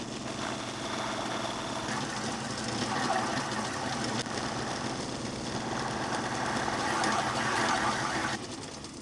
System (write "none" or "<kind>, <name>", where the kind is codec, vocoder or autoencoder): none